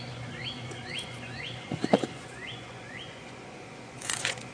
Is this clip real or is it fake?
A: fake